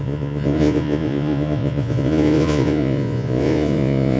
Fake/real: fake